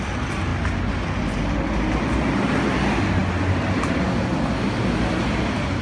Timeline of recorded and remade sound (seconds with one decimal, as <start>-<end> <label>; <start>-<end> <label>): 0.0-5.8 recorded